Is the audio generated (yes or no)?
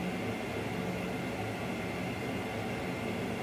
no